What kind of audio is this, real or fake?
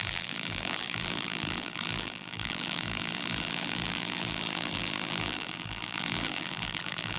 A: fake